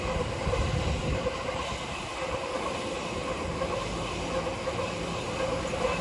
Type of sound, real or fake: real